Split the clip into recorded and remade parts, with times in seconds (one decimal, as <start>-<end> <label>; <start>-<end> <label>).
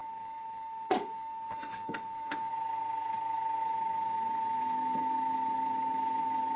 0.0-2.5 remade; 2.5-6.6 recorded